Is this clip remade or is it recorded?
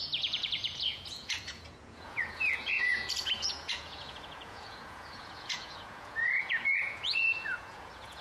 remade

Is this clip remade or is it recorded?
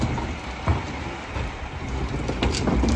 recorded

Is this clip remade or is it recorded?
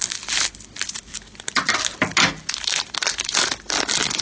recorded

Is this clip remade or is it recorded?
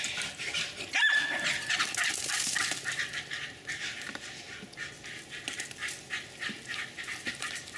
recorded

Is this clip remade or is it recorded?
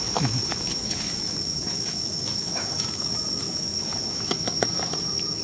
remade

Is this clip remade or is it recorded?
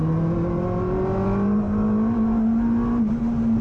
recorded